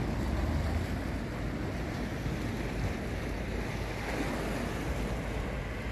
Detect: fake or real real